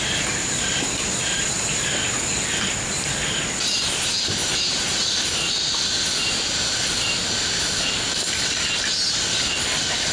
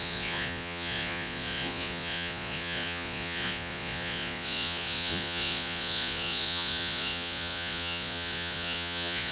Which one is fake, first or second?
second